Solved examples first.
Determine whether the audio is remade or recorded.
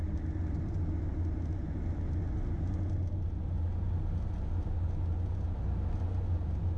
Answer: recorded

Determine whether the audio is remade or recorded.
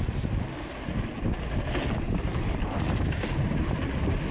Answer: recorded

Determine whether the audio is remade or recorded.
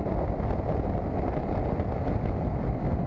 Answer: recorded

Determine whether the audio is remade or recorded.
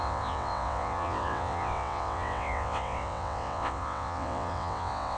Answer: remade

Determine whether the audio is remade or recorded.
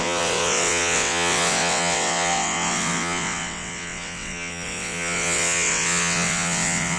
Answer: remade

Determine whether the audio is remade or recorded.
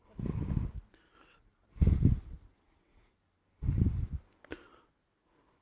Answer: recorded